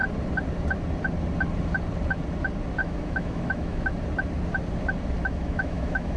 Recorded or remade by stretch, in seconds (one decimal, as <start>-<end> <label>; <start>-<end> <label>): 0.0-2.8 recorded; 2.8-3.9 remade; 3.9-5.2 recorded; 5.2-6.2 remade